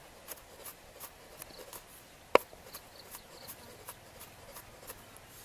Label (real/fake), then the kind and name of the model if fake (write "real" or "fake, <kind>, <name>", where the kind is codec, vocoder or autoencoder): real